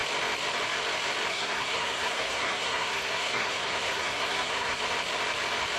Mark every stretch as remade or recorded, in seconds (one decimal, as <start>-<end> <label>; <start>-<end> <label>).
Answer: 0.0-1.3 recorded; 1.3-4.8 remade; 4.8-5.8 recorded